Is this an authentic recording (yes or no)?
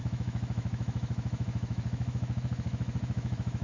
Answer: no